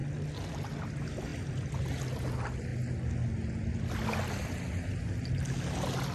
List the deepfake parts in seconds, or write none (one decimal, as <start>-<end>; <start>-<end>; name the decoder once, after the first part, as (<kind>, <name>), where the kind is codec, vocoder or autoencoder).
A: none